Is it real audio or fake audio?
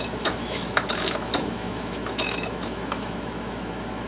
fake